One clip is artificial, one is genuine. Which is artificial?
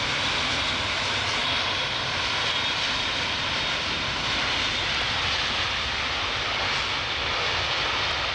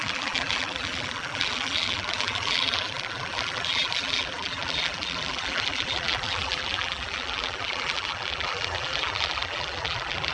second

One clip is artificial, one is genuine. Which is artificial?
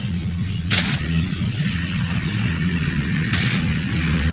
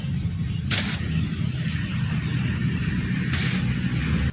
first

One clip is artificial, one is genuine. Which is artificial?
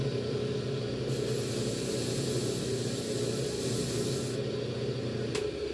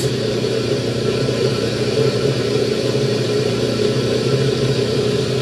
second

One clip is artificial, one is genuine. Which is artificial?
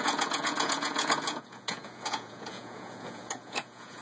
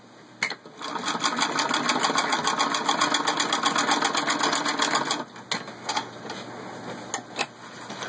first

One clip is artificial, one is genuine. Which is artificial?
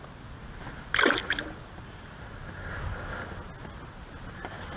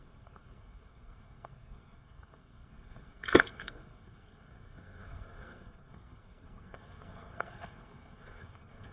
second